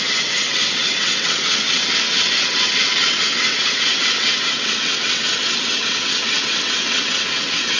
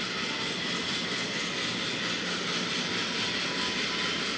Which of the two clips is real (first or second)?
second